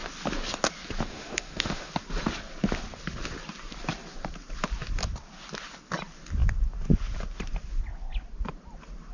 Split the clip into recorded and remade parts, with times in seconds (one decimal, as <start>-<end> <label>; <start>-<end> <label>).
0.0-1.1 recorded; 1.1-1.9 remade; 1.9-9.1 recorded